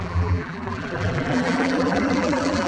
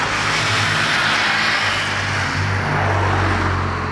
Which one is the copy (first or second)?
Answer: first